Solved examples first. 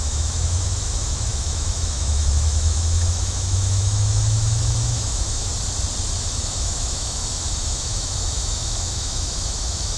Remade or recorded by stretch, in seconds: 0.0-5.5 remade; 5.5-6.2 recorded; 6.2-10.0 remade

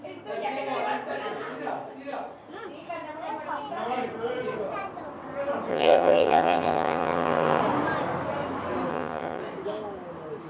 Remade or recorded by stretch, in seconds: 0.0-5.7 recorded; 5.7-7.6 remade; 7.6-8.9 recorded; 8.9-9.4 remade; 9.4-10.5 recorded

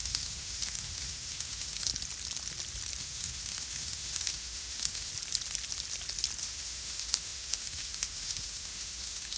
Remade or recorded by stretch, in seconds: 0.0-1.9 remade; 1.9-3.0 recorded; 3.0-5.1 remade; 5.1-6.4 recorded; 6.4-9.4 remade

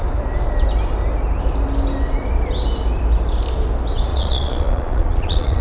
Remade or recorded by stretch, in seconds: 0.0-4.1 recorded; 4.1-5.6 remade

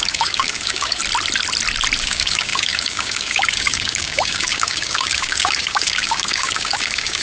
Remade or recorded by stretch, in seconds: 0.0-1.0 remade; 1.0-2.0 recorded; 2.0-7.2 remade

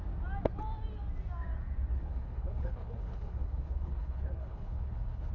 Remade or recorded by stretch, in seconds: 0.0-1.9 recorded; 1.9-5.3 remade

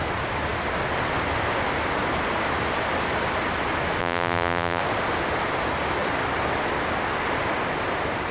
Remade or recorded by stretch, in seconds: 0.0-4.0 recorded; 4.0-4.8 remade; 4.8-8.3 recorded